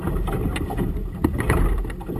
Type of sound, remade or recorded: recorded